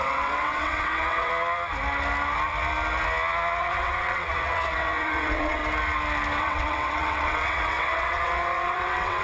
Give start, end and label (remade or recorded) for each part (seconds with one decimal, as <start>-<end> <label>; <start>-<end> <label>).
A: 0.0-1.3 remade; 1.3-3.6 recorded; 3.6-5.6 remade; 5.6-6.4 recorded; 6.4-9.2 remade